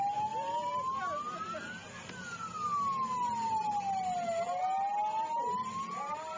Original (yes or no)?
yes